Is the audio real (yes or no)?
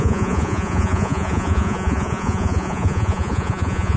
no